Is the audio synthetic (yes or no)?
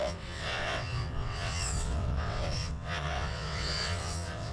yes